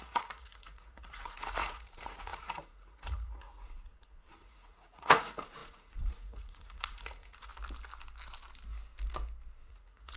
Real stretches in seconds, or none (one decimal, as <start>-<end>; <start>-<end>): 7.5-9.7